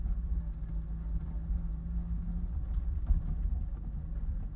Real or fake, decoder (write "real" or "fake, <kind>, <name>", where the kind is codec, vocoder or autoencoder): real